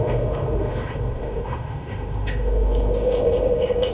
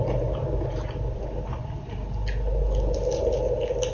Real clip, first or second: second